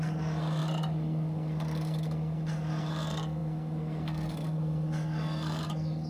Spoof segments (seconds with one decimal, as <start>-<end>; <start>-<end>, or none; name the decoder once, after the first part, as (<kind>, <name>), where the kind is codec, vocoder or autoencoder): 0.0-6.1 (codec, SNAC)